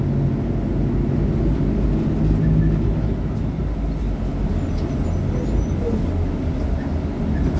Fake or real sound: real